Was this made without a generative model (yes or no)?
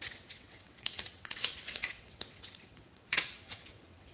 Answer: no